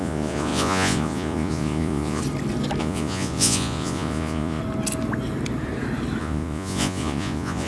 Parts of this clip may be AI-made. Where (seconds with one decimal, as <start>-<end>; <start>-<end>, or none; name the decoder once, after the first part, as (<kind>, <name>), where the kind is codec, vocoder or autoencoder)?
0.0-2.2 (vocoder, Vocos); 2.8-4.6; 6.2-7.7